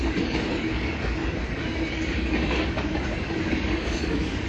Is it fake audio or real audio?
fake